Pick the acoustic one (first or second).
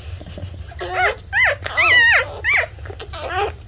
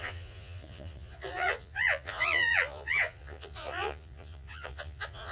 first